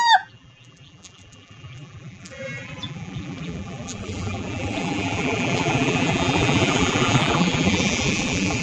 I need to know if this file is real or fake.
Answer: fake